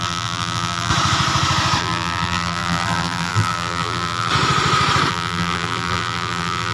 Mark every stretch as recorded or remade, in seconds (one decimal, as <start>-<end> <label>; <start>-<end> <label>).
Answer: 0.0-0.9 remade; 0.9-1.8 recorded; 1.8-4.3 remade; 4.3-5.1 recorded; 5.1-6.7 remade